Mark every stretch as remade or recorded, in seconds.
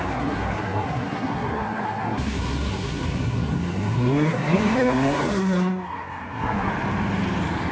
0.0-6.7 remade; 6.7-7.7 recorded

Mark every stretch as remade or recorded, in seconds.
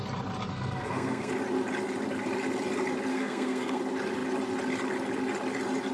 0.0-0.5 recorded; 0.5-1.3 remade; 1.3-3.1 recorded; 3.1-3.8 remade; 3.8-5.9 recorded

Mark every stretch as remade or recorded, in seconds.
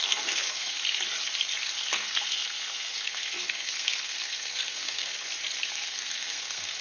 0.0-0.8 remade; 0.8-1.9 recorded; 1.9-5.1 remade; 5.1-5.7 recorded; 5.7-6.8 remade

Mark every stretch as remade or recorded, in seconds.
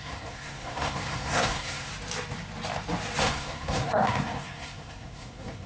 0.0-1.9 remade; 1.9-3.2 recorded; 3.2-5.7 remade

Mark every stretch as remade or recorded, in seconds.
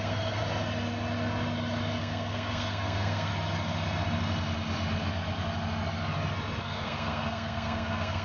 0.0-0.4 remade; 0.4-2.0 recorded; 2.0-3.3 remade; 3.3-6.6 recorded; 6.6-8.2 remade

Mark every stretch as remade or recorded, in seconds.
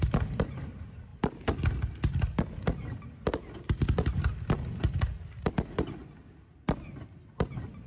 0.0-7.9 recorded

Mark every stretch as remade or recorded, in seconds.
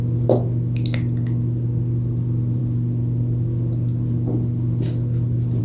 0.0-5.6 recorded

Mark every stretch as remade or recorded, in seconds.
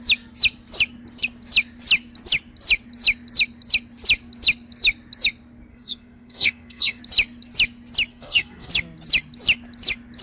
0.0-5.7 recorded; 5.7-7.0 remade; 7.0-8.1 recorded; 8.1-8.7 remade; 8.7-10.2 recorded